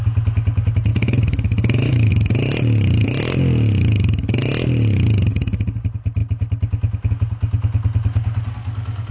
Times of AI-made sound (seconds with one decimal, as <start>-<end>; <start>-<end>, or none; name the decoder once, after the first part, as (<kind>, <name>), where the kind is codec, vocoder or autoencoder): 0.9-2.1 (autoencoder, DAC-VAE)

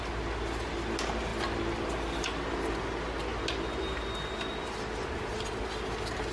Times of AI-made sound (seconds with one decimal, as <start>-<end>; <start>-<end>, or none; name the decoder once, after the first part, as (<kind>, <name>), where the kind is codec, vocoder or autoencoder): none

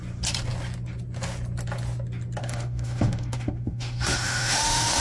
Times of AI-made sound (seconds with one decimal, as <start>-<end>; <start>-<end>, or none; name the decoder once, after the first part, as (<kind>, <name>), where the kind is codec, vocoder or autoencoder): 2.4-5.0 (autoencoder, DAC-VAE)

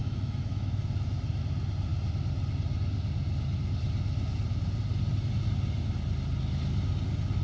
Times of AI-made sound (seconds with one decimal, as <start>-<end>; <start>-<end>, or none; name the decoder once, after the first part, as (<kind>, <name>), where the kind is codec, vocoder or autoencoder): 0.0-0.7 (autoencoder, DAC-VAE)

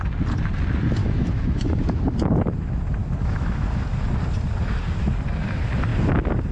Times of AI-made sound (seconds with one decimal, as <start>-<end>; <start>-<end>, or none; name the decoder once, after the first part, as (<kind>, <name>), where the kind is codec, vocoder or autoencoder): 1.0-2.0 (autoencoder, DAC-VAE); 3.0-3.8

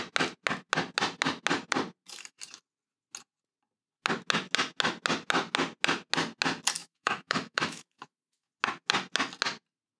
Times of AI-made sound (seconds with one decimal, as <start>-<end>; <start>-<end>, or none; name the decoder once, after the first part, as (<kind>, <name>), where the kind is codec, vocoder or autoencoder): 6.8-8.5 (autoencoder, DAC-VAE)

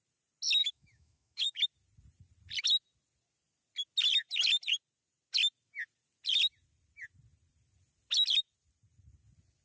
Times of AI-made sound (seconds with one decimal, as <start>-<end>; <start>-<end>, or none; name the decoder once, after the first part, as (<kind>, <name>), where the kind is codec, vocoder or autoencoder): 0.6-1.6 (autoencoder, DAC-VAE)